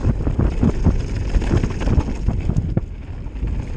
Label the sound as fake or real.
real